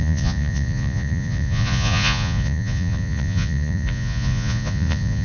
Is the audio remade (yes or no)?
yes